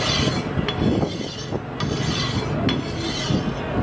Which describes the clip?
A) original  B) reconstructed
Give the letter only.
A